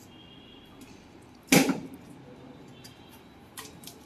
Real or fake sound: real